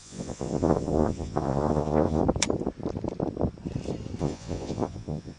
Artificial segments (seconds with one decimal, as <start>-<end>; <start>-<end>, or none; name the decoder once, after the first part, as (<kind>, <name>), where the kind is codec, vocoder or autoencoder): 0.0-2.2 (vocoder, Vocos); 4.2-5.4